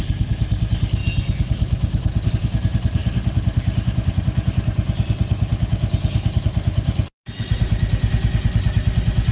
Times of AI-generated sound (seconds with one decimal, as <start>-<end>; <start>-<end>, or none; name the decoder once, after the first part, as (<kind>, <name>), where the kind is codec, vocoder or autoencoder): none

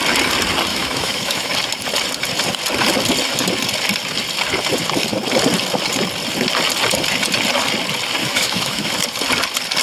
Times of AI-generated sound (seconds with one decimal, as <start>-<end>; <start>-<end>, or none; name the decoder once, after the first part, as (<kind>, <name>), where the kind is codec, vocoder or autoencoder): 0.7-1.5 (autoencoder, DAC-VAE); 8.2-8.9

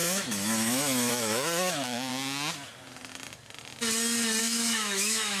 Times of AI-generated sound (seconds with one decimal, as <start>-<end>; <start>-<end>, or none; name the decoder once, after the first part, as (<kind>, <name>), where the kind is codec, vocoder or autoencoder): 0.0-2.1 (autoencoder, DAC-VAE); 4.4-5.4

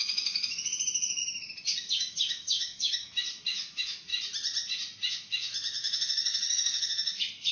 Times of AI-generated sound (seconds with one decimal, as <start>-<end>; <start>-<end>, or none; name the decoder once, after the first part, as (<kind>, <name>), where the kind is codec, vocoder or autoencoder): 0.0-1.2 (autoencoder, DAC-VAE); 1.9-4.1; 5.1-7.5

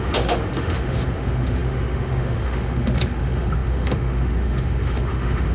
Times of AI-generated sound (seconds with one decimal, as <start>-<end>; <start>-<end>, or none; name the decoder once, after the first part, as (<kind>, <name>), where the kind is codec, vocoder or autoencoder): 0.0-5.5 (autoencoder, DAC-VAE)

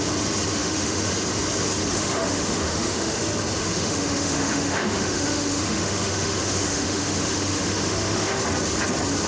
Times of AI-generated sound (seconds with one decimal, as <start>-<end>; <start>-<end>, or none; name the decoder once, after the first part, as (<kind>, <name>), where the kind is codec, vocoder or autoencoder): 0.5-1.1 (autoencoder, DAC-VAE); 1.9-3.2; 3.6-8.4

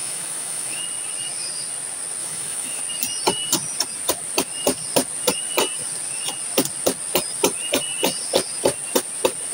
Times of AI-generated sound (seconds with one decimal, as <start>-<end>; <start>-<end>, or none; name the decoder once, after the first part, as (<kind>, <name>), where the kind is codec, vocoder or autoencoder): 0.0-0.8 (autoencoder, DAC-VAE); 2.2-2.8

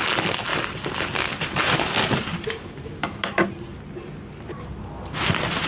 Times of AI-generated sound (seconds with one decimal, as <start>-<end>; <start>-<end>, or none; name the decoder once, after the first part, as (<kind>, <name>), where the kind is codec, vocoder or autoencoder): none